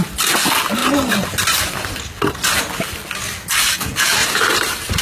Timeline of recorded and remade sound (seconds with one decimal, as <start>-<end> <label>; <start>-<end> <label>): 0.0-4.2 recorded; 4.2-5.0 remade